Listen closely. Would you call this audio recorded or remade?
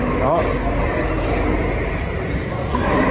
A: recorded